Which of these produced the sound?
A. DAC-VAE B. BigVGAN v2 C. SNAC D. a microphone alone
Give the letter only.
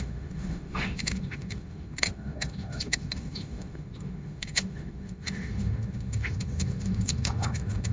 A